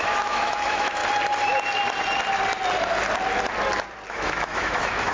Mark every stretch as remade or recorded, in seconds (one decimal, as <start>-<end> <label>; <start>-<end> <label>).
0.0-1.0 remade; 1.0-4.1 recorded; 4.1-5.1 remade